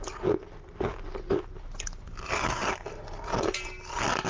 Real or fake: real